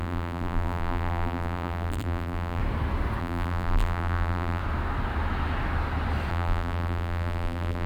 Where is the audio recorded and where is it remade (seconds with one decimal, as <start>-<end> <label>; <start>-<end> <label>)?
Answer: 0.0-2.6 remade; 2.6-3.2 recorded; 3.2-4.6 remade; 4.6-6.3 recorded; 6.3-7.9 remade